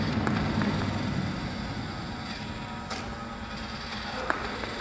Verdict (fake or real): real